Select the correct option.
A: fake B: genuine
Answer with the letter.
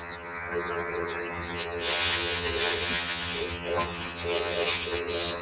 A